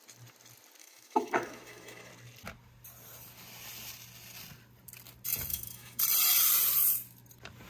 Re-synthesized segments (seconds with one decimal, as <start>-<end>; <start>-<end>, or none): 0.8-2.1; 5.5-6.0